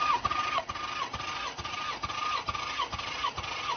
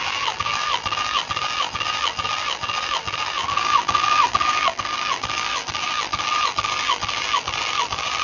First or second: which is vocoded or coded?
second